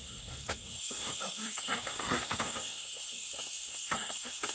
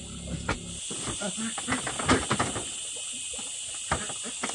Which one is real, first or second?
second